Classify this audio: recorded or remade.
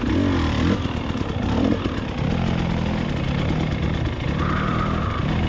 recorded